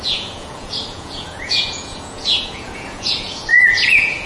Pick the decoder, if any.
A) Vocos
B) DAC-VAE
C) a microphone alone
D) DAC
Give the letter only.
A